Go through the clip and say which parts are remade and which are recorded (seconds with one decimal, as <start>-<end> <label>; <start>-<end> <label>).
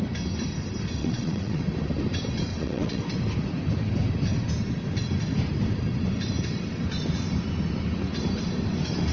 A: 0.0-1.0 recorded; 1.0-1.6 remade; 1.6-2.5 recorded; 2.5-3.0 remade; 3.0-9.1 recorded